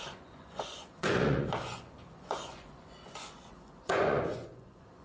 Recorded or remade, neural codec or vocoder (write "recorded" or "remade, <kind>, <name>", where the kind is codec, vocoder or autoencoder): remade, vocoder, Vocos